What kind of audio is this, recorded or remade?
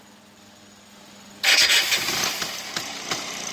recorded